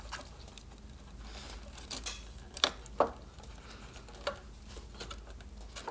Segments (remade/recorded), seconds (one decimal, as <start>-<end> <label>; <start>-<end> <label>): 0.0-5.9 recorded